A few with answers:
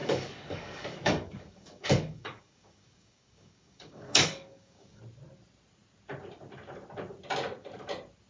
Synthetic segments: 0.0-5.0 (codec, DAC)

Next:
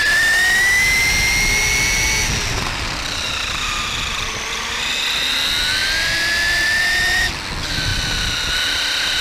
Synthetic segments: none

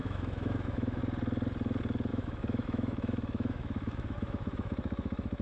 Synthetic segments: 0.0-1.0 (autoencoder, DAC-VAE); 2.1-5.4

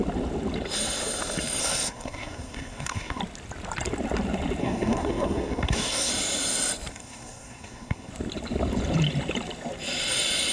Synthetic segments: 1.6-3.2 (codec, SNAC); 4.6-6.1; 6.9-8.1

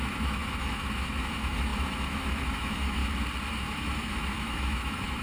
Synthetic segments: 0.0-3.0 (autoencoder, DAC-VAE); 3.5-5.2